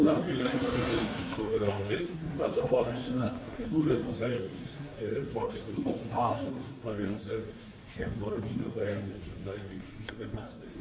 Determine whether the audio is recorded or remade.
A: remade